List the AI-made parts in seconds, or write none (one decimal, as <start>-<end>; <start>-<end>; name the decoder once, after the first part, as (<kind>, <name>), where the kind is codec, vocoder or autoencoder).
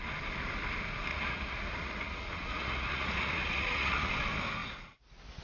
1.1-4.1 (vocoder, Vocos)